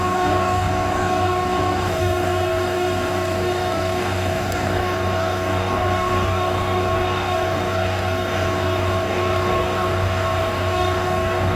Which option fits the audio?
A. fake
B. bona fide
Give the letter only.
A